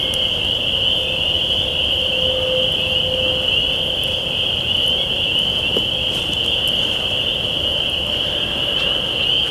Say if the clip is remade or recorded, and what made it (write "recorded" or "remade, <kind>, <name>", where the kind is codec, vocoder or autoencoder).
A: recorded